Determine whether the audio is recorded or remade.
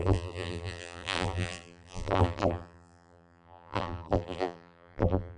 remade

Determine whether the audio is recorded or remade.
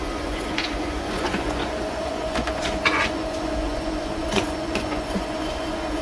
remade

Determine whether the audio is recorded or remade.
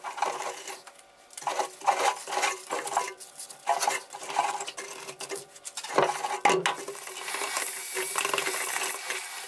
recorded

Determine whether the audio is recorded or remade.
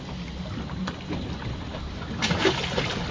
recorded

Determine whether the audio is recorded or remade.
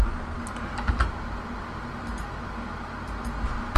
recorded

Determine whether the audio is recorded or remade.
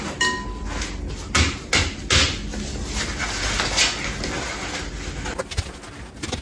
recorded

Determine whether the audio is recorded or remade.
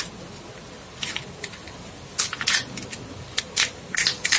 recorded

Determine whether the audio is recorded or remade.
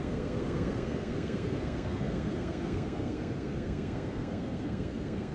remade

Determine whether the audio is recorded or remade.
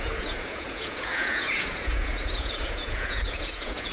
remade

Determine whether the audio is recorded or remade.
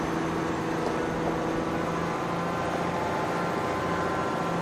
recorded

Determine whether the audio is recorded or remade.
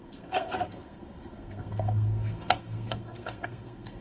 remade